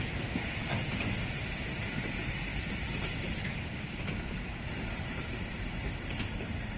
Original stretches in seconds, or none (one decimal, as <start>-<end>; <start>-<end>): 0.6-1.8